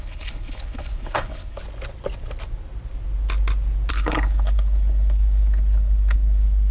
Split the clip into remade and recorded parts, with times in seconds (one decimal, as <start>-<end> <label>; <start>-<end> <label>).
0.0-1.6 remade; 1.6-3.9 recorded; 3.9-6.7 remade